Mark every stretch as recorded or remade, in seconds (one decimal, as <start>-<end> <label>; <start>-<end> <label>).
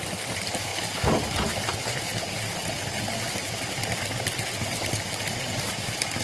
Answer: 0.0-0.7 remade; 0.7-1.7 recorded; 1.7-2.1 remade; 2.1-5.4 recorded; 5.4-6.2 remade